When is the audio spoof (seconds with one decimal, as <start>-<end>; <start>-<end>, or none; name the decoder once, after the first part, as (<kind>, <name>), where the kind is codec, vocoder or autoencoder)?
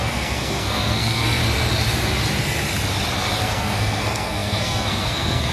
0.0-1.4 (codec, SNAC); 3.4-5.5